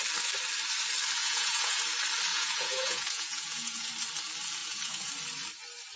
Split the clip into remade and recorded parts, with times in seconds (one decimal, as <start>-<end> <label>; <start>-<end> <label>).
0.0-1.2 recorded; 1.2-1.8 remade; 1.8-2.3 recorded; 2.3-3.9 remade; 3.9-4.6 recorded; 4.6-5.1 remade; 5.1-6.0 recorded